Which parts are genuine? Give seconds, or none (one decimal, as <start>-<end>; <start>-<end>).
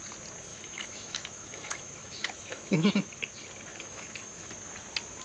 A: 0.0-0.5; 2.9-3.7; 4.5-5.2